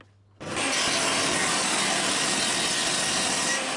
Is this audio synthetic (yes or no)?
no